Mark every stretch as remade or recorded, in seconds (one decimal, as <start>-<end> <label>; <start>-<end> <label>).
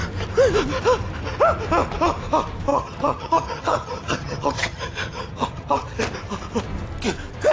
0.0-2.7 recorded; 2.7-6.0 remade; 6.0-7.5 recorded